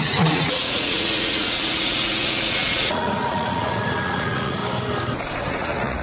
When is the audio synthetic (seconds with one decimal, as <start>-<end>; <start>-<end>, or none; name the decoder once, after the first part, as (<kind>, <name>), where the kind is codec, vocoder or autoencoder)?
0.0-4.6 (vocoder, Vocos); 5.4-6.0